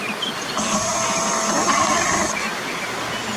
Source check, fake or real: real